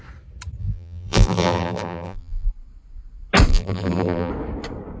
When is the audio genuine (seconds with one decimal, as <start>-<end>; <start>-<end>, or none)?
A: 0.0-0.6; 2.5-3.5; 4.3-5.0